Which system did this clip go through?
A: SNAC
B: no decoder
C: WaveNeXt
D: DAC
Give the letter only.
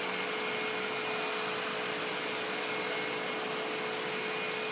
B